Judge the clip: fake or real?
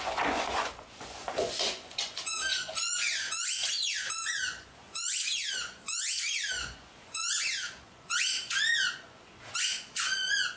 fake